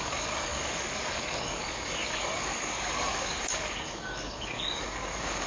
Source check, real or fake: fake